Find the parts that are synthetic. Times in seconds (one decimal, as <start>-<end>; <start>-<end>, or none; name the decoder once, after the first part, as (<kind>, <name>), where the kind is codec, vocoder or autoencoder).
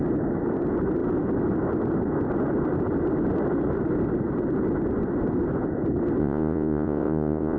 6.2-7.6 (vocoder, Vocos)